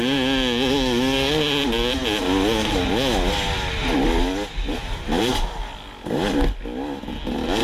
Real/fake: real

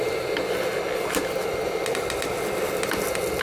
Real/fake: real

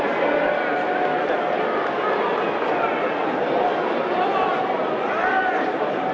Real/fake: real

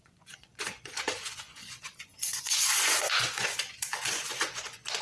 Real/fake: fake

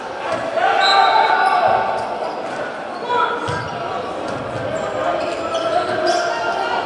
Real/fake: real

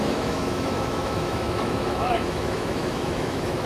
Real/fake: fake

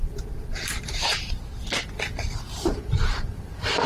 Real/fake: real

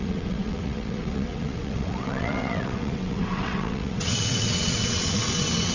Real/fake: fake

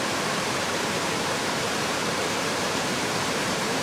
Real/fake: fake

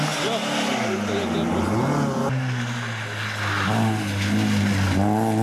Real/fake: real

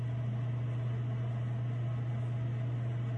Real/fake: real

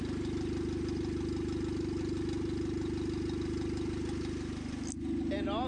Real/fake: real